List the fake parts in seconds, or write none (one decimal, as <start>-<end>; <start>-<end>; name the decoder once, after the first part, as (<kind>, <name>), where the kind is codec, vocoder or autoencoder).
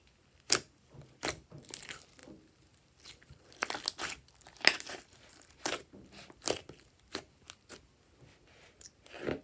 none